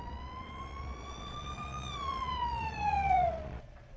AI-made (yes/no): yes